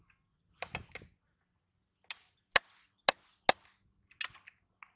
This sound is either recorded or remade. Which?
recorded